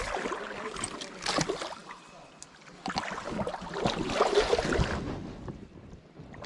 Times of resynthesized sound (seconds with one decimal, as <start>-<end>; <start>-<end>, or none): none

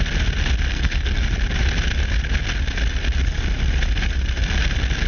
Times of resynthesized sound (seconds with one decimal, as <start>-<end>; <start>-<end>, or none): 0.7-1.2

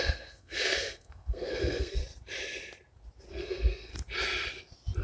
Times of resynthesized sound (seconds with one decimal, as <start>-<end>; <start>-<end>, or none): 0.0-2.0; 3.3-3.9